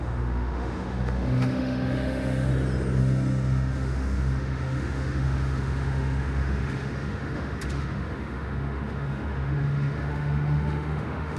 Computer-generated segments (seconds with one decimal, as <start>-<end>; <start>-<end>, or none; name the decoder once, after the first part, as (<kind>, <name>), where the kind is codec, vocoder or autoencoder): 0.0-2.5 (autoencoder, DAC-VAE); 3.0-11.4

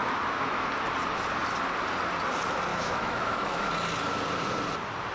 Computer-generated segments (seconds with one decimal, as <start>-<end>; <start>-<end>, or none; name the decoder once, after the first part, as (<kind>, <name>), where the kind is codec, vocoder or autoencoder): 0.0-0.7 (autoencoder, DAC-VAE); 2.7-3.7